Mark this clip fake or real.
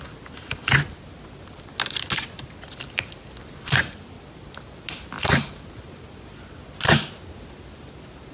real